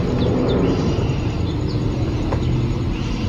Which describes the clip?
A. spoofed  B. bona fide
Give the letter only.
B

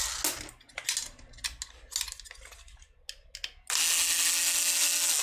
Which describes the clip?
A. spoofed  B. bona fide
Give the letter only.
B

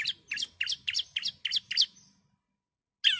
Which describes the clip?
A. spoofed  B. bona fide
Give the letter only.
B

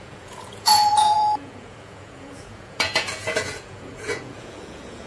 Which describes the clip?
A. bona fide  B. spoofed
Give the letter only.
B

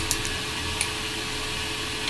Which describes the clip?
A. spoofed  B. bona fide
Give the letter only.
B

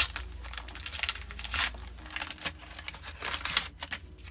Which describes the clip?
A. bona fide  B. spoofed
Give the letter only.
A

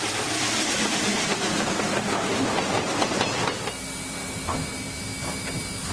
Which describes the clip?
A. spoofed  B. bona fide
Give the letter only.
B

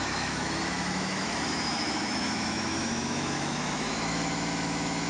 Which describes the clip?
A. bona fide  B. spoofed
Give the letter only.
B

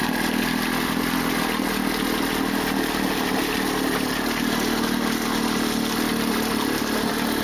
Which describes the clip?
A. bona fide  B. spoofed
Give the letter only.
A